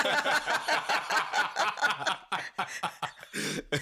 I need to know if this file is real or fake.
real